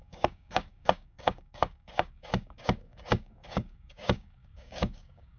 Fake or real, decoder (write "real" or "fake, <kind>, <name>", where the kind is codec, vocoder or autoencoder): fake, codec, DAC